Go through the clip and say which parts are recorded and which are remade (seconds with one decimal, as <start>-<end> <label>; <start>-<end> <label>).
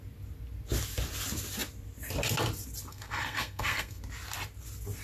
0.0-2.9 recorded; 2.9-4.0 remade; 4.0-5.0 recorded